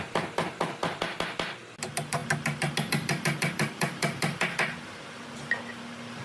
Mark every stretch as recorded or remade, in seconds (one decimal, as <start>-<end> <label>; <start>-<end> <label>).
0.0-6.2 recorded